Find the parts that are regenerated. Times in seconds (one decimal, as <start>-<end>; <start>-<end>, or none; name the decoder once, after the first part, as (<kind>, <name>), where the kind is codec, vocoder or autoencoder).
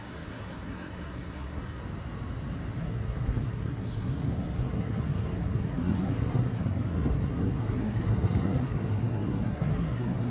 0.0-1.8 (codec, SNAC); 2.8-10.3